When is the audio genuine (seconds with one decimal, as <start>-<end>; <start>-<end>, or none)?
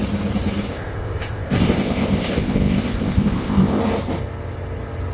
0.0-0.7; 3.8-5.1